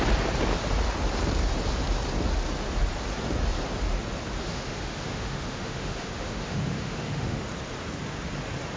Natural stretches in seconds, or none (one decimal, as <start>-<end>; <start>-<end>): 0.0-4.4; 7.4-8.8